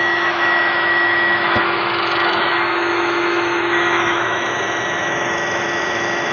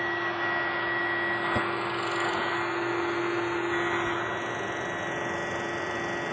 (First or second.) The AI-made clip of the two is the first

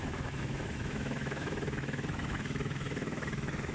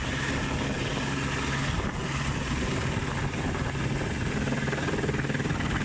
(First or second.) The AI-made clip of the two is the first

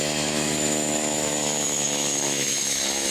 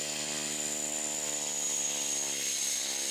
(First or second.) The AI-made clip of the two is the first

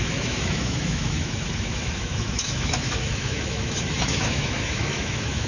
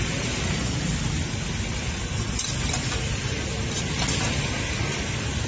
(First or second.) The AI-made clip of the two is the first